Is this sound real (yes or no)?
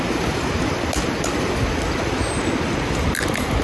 yes